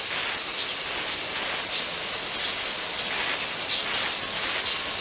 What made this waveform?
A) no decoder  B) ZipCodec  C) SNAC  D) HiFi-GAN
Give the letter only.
A